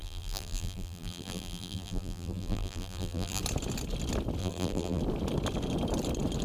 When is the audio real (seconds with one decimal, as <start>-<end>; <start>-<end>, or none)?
3.4-4.4; 5.0-6.4

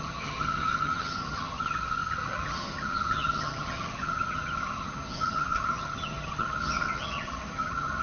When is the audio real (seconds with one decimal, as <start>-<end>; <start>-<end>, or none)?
none

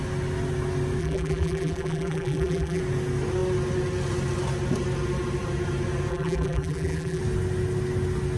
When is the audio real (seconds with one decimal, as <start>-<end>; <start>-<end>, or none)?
0.0-1.0; 2.8-6.1; 7.2-8.4

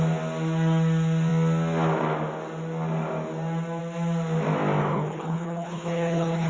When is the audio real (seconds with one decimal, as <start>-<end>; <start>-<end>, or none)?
0.0-4.8